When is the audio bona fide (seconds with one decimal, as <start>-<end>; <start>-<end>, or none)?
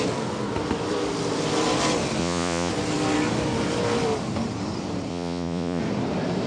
0.0-2.2; 2.7-5.1; 5.8-6.5